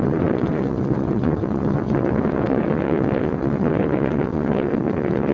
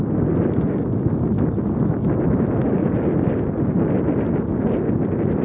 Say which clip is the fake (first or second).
first